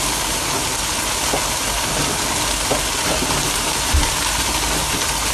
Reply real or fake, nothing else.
real